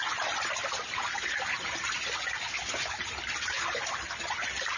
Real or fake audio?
real